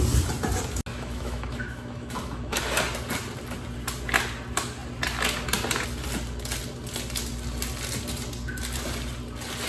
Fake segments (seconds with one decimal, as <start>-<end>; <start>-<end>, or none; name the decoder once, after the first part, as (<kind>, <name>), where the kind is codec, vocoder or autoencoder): 0.9-2.6 (autoencoder, DAC-VAE)